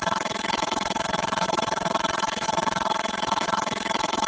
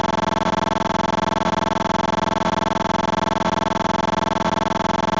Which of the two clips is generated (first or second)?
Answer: first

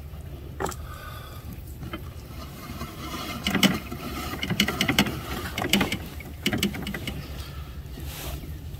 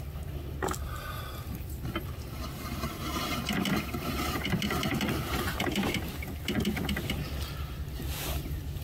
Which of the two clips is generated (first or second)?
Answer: first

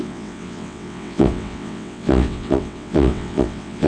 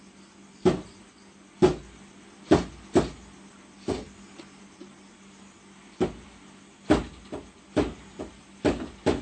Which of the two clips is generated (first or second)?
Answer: first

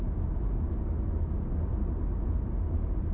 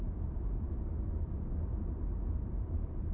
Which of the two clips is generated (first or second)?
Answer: second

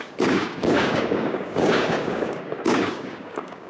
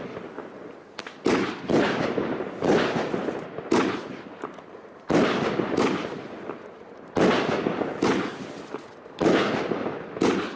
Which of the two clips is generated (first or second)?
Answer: first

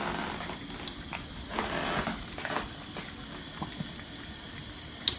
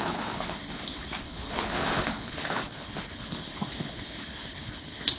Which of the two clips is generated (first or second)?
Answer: second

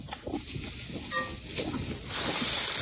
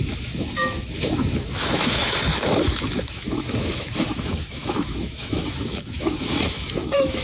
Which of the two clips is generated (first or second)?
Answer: second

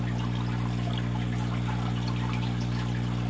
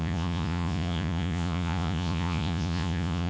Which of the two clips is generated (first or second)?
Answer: second